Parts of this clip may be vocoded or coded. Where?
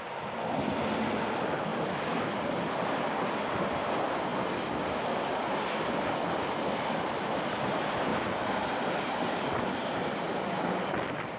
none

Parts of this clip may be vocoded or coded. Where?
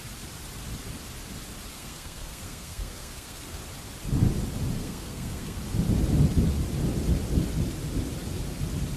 1.7-3.6 (codec, SNAC); 4.8-5.6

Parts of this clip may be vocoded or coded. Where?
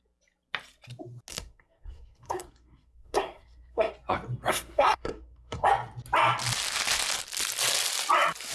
1.3-3.9 (codec, SNAC); 4.5-5.7